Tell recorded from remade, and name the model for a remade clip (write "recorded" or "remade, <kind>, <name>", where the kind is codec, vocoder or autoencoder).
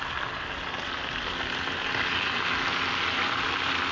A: recorded